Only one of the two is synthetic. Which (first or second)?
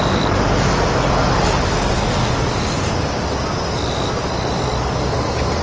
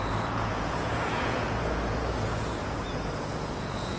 second